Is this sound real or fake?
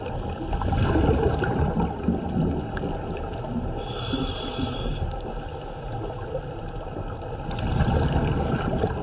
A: real